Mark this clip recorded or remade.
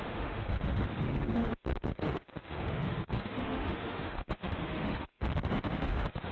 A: remade